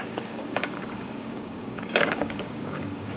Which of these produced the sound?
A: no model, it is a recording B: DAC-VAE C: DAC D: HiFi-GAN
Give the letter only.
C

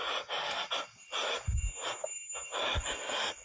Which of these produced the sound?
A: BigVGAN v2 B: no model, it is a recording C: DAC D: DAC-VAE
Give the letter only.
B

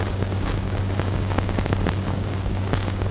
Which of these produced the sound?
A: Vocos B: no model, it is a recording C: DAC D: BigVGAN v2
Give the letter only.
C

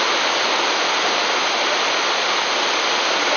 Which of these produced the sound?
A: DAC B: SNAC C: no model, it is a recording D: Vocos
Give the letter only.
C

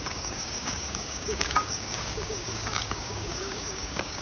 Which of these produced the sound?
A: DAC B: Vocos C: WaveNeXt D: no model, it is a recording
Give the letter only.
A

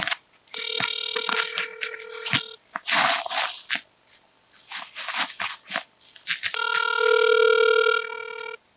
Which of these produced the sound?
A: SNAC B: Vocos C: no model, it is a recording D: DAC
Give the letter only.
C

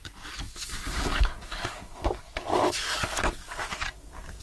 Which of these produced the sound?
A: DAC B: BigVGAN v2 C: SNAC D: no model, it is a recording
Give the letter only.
A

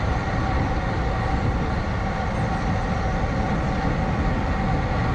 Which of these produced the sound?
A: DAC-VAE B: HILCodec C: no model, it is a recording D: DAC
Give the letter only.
C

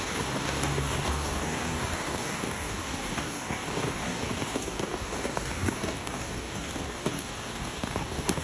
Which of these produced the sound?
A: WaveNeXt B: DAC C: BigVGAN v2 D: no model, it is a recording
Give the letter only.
B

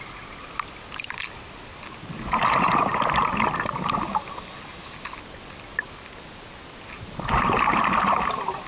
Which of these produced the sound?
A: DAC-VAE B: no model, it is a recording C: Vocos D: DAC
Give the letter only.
B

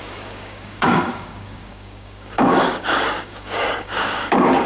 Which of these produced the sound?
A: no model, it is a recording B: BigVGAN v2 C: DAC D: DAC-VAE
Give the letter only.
C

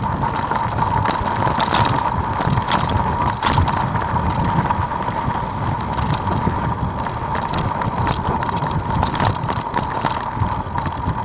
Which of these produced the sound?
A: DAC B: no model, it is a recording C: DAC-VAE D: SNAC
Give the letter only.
B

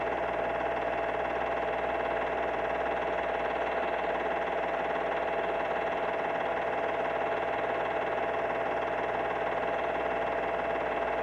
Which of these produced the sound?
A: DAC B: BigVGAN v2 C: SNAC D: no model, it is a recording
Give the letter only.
D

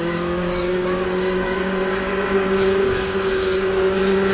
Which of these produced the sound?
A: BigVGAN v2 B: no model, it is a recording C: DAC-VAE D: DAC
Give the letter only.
D